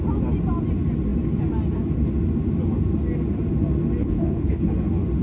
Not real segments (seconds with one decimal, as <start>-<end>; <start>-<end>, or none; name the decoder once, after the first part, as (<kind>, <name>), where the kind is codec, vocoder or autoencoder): 4.0-4.7 (codec, HILCodec)